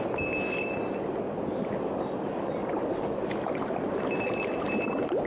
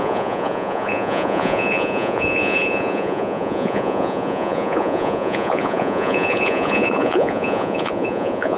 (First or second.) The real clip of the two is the first